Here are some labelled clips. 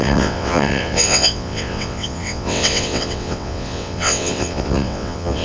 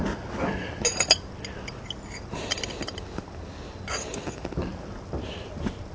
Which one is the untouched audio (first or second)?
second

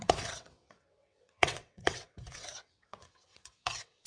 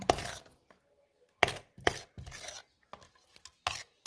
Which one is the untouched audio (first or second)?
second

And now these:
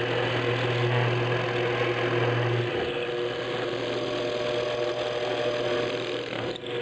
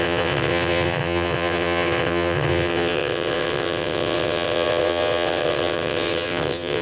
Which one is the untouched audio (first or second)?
first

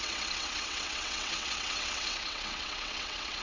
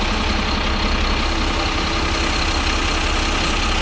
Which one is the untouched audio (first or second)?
second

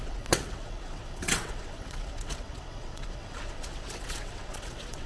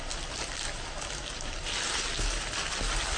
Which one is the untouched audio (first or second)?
second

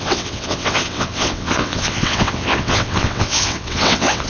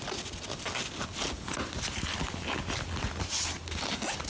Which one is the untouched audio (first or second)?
second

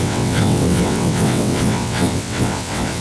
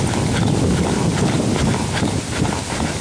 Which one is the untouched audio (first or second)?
second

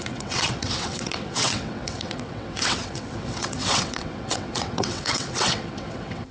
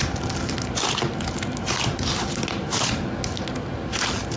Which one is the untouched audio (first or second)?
second